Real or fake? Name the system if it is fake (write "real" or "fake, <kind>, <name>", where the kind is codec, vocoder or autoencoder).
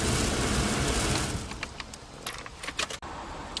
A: real